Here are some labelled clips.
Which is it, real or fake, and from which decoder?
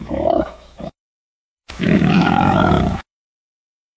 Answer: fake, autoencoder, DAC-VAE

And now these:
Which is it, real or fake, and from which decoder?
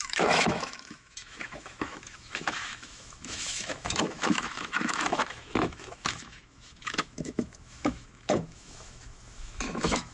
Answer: fake, autoencoder, DAC-VAE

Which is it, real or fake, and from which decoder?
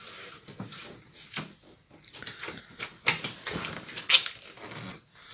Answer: real